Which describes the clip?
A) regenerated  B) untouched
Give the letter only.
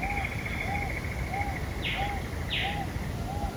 B